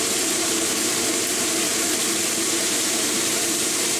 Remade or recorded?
remade